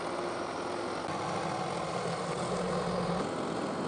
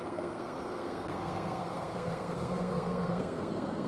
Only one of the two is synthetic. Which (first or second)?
second